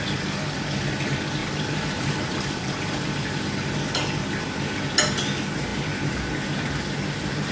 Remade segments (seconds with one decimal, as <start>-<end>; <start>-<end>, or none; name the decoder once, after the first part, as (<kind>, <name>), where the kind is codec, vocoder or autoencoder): 1.4-3.7 (vocoder, BigVGAN v2)